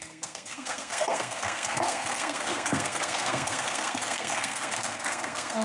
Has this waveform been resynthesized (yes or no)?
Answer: yes